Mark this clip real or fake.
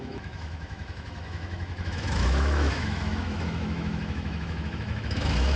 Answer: fake